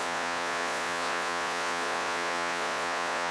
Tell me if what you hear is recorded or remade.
remade